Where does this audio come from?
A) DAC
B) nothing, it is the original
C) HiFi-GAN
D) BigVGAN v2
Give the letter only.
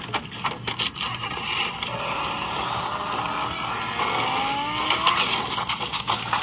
B